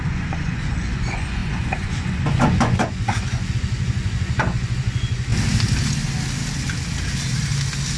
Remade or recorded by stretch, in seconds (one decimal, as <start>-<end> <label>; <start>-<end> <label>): 0.0-5.3 remade; 5.3-8.0 recorded